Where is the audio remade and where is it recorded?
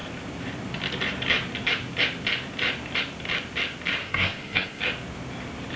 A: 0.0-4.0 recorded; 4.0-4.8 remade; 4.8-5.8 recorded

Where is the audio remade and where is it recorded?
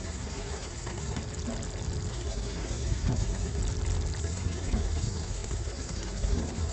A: 0.0-1.2 remade; 1.2-2.1 recorded; 2.1-3.6 remade; 3.6-4.2 recorded; 4.2-6.7 remade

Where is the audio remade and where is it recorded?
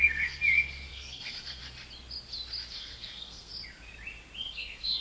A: 0.0-0.4 remade; 0.4-0.9 recorded; 0.9-1.6 remade; 1.6-2.7 recorded; 2.7-3.5 remade; 3.5-4.4 recorded; 4.4-5.0 remade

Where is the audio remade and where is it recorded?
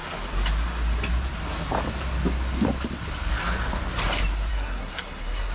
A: 0.0-4.5 recorded; 4.5-5.5 remade